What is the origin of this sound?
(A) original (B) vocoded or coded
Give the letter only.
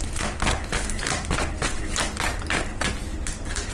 A